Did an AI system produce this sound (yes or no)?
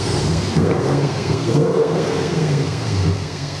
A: yes